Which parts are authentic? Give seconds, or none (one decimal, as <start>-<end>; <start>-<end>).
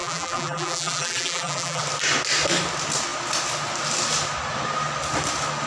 1.8-5.7